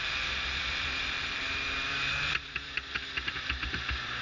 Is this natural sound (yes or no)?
no